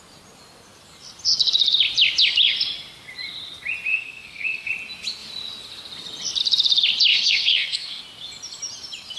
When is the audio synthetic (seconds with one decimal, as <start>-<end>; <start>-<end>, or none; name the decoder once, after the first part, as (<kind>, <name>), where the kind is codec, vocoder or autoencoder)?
3.9-4.7 (codec, SNAC); 7.1-8.0